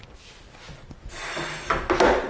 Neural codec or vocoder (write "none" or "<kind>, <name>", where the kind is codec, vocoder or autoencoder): none